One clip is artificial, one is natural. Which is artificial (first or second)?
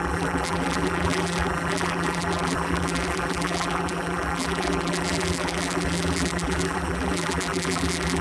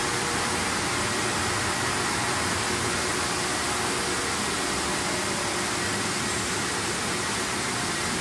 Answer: first